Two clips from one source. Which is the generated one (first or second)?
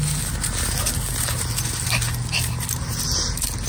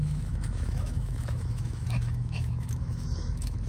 second